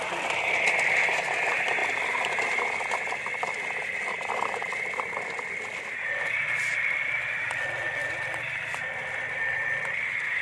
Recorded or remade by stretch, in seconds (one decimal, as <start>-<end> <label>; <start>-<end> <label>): 0.0-10.4 recorded

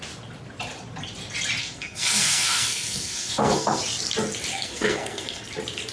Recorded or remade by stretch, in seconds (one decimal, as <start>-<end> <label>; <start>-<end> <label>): 0.0-1.6 recorded; 1.6-3.8 remade; 3.8-4.5 recorded; 4.5-5.4 remade; 5.4-5.9 recorded